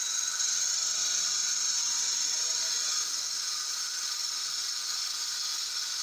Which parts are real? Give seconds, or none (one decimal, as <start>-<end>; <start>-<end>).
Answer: 0.0-1.0; 4.6-6.0